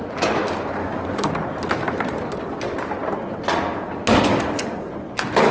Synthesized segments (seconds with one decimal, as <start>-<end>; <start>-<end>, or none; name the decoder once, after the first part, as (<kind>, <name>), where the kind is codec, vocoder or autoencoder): 0.8-1.3 (codec, DAC); 4.3-4.9